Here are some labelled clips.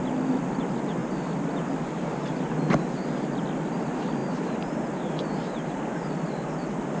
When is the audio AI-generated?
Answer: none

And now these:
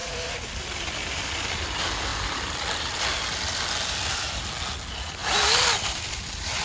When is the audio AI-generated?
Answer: 2.1-4.5 (vocoder, BigVGAN v2); 5.2-6.1

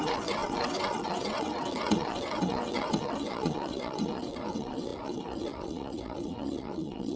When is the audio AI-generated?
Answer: 0.0-7.2 (vocoder, WaveNeXt)

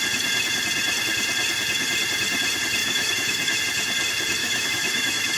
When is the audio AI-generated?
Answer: 2.8-3.6 (autoencoder, DAC-VAE); 4.4-5.4

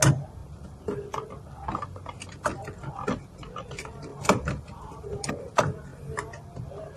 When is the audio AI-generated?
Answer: 4.1-5.3 (vocoder, BigVGAN v2)

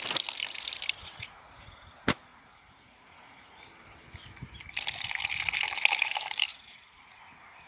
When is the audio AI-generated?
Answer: 1.0-1.9 (vocoder, Vocos); 2.3-3.6; 6.5-7.2

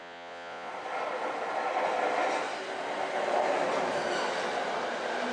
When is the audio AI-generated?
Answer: 0.0-0.7 (vocoder, Vocos)